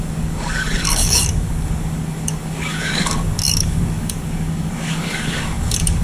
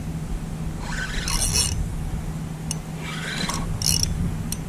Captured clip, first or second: second